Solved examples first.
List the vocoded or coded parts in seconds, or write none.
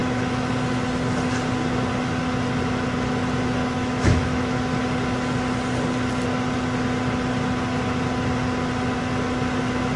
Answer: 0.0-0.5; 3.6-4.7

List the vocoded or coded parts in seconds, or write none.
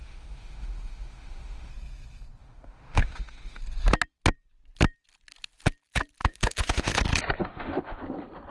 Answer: 0.0-1.7; 2.4-3.6; 6.2-7.0; 7.4-8.0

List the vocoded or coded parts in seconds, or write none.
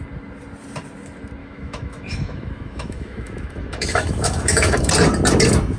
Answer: 1.4-4.9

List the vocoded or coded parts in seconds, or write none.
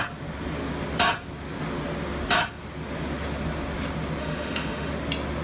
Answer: 4.2-4.9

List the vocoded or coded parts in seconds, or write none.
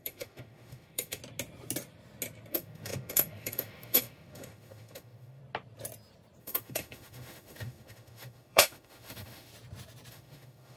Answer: 0.0-1.2; 2.5-5.4; 6.4-9.5; 10.1-10.8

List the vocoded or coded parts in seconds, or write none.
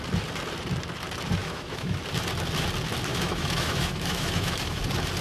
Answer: 1.4-2.0; 3.1-4.8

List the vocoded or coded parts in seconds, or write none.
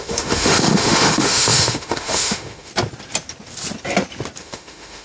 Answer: 0.0-2.7; 4.4-5.0